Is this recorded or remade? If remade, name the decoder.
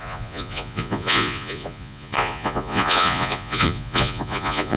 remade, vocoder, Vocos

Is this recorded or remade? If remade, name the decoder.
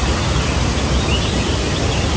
recorded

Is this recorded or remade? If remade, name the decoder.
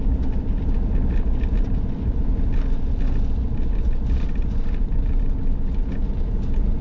recorded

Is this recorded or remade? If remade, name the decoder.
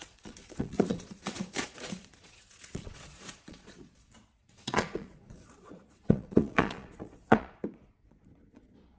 remade, vocoder, Vocos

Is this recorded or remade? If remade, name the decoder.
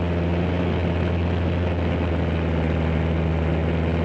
recorded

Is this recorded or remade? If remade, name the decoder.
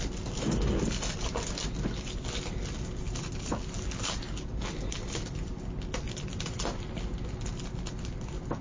recorded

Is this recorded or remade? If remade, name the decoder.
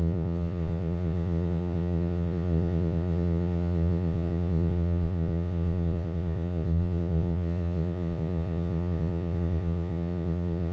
remade, vocoder, Vocos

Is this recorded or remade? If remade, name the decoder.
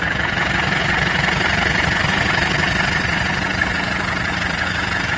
remade, vocoder, Vocos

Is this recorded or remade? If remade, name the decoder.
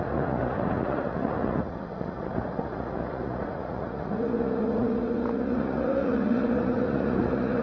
remade, vocoder, Vocos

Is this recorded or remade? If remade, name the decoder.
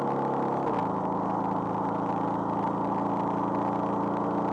recorded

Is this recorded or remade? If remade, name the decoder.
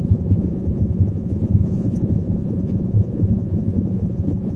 remade, vocoder, Vocos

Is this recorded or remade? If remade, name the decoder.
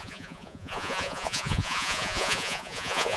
remade, vocoder, Vocos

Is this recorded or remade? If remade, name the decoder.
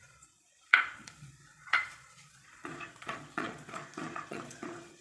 remade, vocoder, Vocos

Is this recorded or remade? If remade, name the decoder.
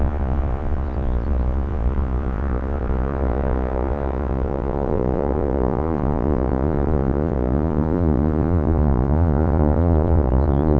remade, vocoder, Vocos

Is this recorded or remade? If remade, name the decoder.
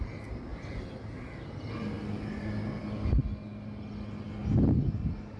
recorded